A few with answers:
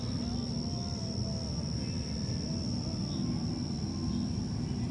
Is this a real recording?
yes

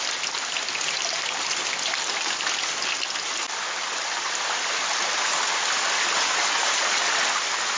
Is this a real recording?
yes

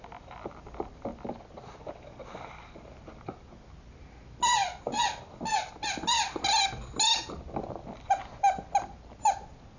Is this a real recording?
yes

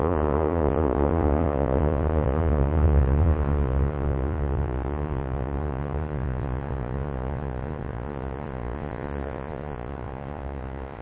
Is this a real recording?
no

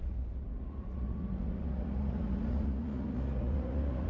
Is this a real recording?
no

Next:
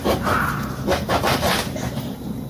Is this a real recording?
yes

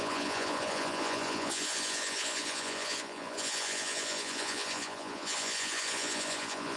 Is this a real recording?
no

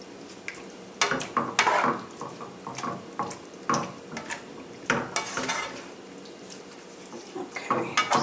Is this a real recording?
yes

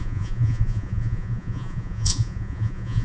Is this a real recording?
no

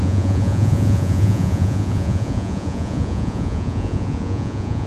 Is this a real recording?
no